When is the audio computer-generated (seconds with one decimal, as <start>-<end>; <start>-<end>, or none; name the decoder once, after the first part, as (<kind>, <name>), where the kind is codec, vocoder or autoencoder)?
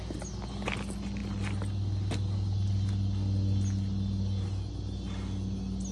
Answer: none